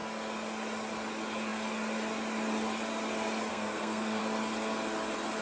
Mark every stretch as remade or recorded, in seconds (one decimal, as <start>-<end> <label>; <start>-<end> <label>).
0.0-3.5 recorded; 3.5-4.2 remade; 4.2-5.4 recorded